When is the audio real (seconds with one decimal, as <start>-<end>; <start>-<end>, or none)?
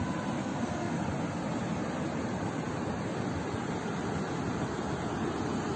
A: 0.0-0.4; 1.0-5.8